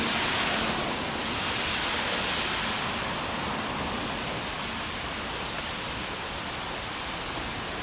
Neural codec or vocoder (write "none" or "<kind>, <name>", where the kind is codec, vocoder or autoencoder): none